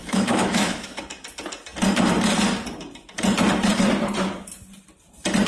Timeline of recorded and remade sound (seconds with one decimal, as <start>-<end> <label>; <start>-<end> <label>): 0.0-1.0 remade; 1.0-5.5 recorded